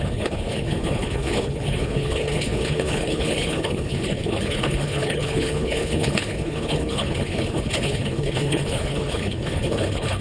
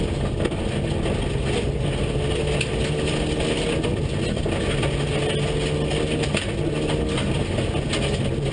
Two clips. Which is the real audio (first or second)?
second